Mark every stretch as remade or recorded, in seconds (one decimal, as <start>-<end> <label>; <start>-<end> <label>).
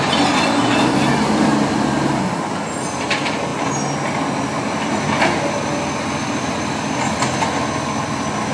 0.0-8.5 recorded